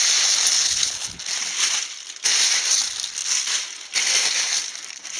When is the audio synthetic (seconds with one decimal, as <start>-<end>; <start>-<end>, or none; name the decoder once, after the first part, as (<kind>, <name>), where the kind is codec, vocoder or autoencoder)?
0.6-1.2 (codec, HILCodec)